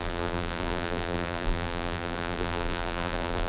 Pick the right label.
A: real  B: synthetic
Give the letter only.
B